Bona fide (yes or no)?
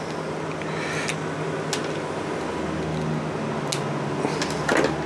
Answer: yes